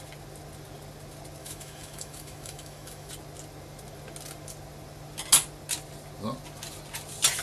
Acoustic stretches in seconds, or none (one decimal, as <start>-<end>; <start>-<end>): 0.0-1.4; 3.1-7.4